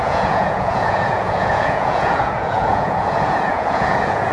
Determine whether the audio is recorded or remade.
remade